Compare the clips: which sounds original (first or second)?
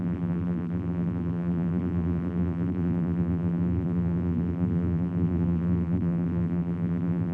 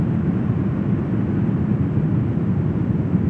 second